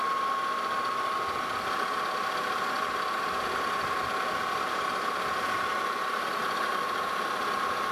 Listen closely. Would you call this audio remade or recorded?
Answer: recorded